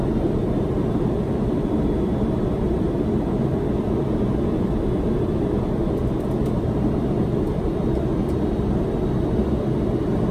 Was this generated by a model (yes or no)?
yes